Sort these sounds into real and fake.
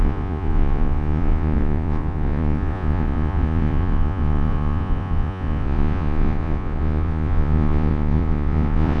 fake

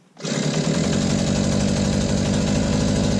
real